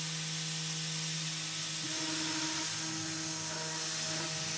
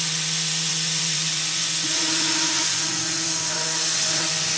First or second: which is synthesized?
second